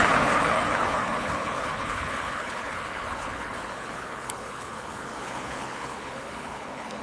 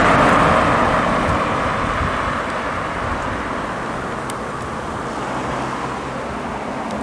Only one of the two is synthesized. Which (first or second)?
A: first